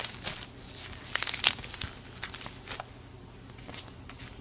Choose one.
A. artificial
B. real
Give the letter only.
B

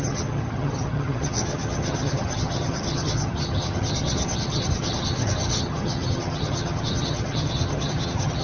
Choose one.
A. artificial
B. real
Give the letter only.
A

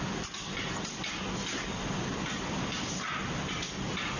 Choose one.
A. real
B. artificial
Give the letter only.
A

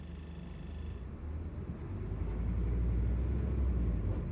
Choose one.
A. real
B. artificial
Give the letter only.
A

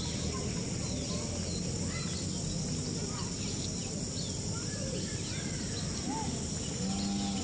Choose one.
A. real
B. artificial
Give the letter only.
A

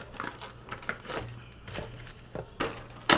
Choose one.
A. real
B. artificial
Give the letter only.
A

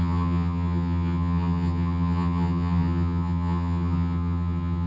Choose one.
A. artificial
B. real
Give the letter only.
A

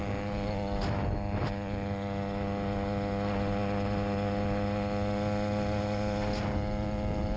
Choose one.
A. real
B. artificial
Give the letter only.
A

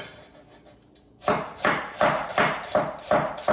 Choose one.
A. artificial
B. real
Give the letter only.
B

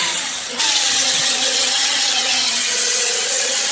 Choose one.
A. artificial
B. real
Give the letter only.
A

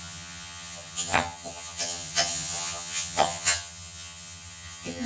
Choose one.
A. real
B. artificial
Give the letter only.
B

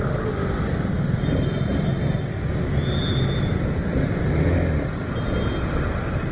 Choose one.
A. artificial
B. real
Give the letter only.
B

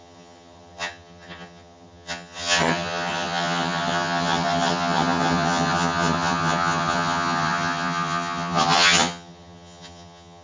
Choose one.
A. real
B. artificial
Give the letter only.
B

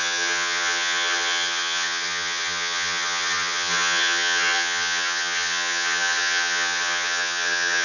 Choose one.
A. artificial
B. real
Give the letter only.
A